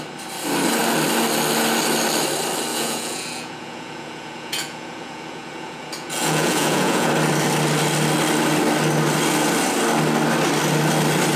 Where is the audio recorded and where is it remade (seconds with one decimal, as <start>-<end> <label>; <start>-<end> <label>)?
0.0-2.7 recorded; 2.7-7.1 remade; 7.1-11.4 recorded